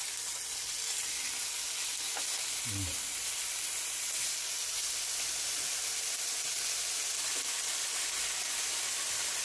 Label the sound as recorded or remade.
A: recorded